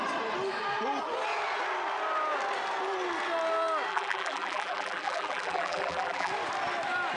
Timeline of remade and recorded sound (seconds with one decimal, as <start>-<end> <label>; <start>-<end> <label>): 0.0-3.9 recorded; 3.9-6.3 remade; 6.3-7.2 recorded